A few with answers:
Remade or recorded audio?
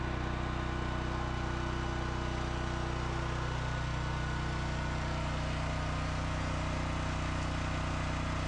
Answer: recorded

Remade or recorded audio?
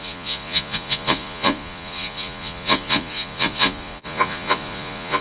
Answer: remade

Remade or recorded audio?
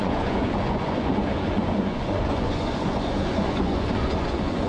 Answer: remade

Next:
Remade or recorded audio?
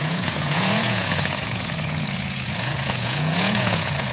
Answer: remade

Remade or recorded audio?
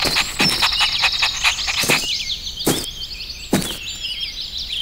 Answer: recorded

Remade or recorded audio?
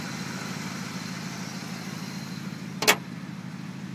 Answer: recorded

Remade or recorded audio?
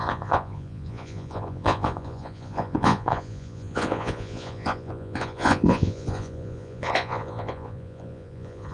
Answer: remade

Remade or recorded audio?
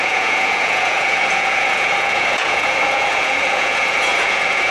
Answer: remade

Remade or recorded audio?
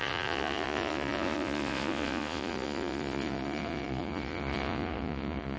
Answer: remade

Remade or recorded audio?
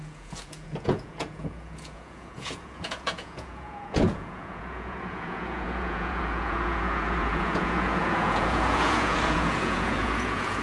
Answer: remade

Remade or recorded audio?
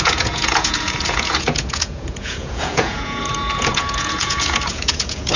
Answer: remade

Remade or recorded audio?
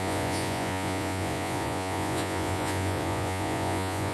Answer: remade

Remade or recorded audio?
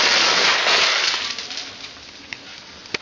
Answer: recorded